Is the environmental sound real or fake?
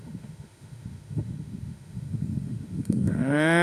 fake